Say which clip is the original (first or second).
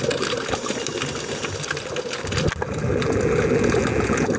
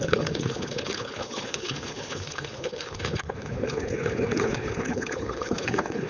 first